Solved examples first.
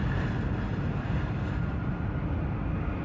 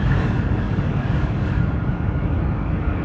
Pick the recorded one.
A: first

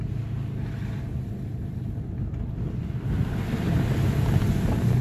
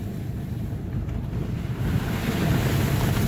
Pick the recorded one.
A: first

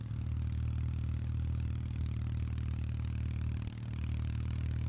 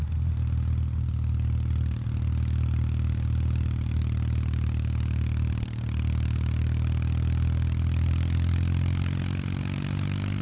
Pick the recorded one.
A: second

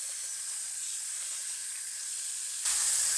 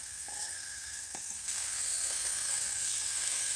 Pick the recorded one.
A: first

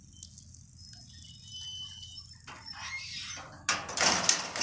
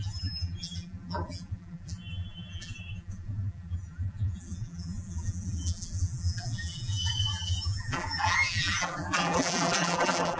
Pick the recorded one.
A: first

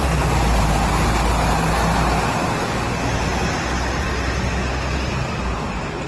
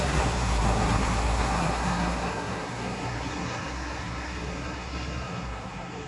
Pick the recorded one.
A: first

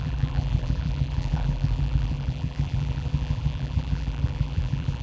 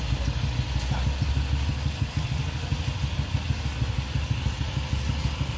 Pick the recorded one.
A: second